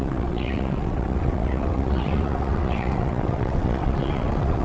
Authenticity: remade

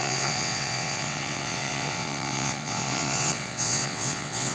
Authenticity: remade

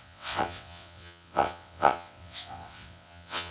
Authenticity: remade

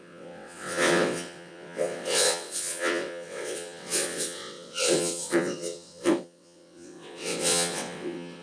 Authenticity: remade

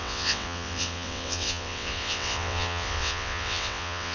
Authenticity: remade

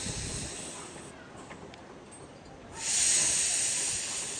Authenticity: recorded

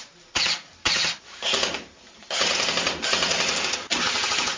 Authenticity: recorded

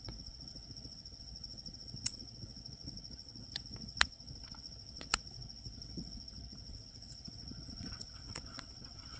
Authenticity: remade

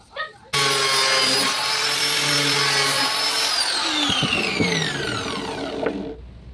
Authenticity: recorded